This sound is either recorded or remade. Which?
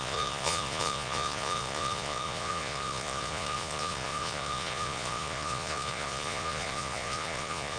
remade